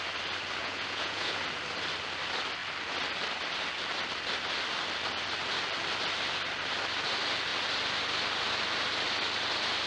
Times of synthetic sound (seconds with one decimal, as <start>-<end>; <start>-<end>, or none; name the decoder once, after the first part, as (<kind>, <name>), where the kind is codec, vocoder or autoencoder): 0.6-1.4 (vocoder, Vocos)